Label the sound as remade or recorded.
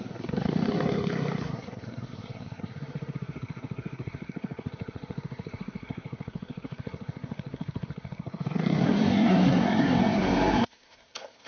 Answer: remade